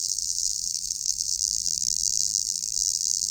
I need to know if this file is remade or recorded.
remade